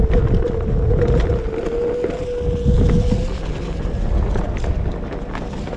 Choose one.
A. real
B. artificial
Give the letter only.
A